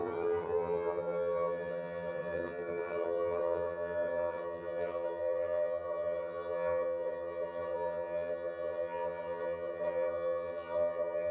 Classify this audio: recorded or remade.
remade